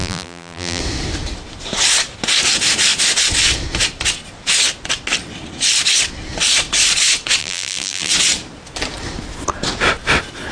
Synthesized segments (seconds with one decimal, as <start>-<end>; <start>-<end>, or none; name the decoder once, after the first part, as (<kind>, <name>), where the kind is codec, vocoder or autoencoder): 0.0-0.8 (vocoder, BigVGAN v2); 7.4-8.1

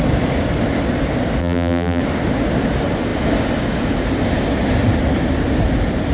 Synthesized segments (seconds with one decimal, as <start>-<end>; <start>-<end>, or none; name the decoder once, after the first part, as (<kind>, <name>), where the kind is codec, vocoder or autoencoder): 1.4-2.0 (vocoder, BigVGAN v2)

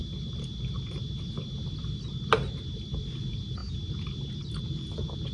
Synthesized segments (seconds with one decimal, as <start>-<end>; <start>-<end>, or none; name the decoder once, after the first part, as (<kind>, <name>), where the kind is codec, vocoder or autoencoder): 3.2-3.6 (vocoder, BigVGAN v2); 4.5-5.3